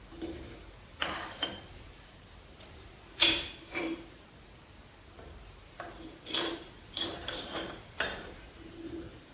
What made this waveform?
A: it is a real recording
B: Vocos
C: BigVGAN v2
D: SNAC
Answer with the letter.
C